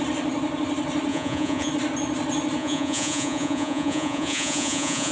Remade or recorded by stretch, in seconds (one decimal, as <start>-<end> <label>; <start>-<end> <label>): 0.0-1.1 recorded; 1.1-1.7 remade; 1.7-2.6 recorded; 2.6-5.1 remade